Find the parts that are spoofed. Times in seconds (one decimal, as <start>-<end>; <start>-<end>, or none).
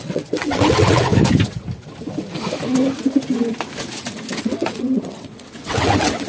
0.0-1.1; 4.4-6.3